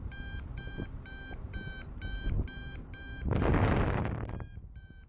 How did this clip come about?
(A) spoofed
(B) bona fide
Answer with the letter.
B